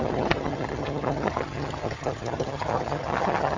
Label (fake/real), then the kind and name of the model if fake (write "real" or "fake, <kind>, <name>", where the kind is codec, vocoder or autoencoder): fake, vocoder, HiFi-GAN